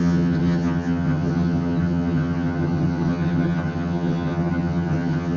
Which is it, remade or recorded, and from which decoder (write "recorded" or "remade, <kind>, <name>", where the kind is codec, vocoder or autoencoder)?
remade, vocoder, HiFi-GAN